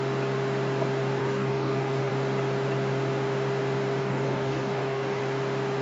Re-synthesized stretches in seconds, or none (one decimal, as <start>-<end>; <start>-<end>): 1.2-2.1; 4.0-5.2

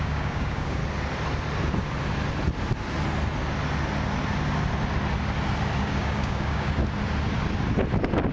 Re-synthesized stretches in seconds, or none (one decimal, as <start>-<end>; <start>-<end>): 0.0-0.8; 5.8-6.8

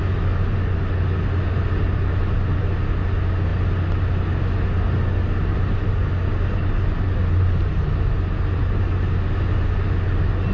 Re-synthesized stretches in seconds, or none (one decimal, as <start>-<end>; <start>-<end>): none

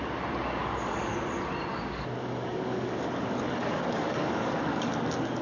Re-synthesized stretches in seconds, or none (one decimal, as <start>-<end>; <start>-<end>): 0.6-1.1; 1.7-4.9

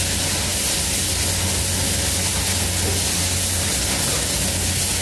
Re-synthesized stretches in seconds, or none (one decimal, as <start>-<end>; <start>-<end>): none

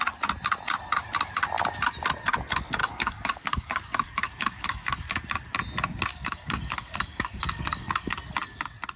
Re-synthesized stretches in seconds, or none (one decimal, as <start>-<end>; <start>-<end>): 2.8-5.2; 6.1-8.1

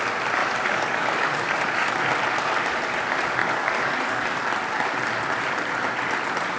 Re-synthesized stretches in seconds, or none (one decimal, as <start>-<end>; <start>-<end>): 0.4-1.9; 3.4-4.4

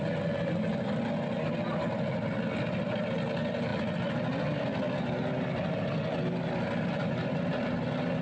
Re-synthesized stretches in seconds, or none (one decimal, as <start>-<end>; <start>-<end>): none